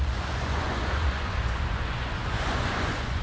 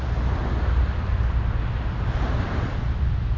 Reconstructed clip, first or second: first